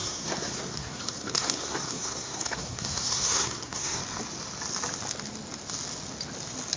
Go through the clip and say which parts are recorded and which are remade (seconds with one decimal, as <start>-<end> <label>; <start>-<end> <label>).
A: 0.0-4.0 remade; 4.0-6.8 recorded